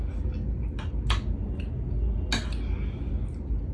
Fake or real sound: real